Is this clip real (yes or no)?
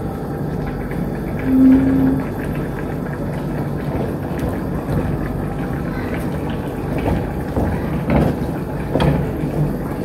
yes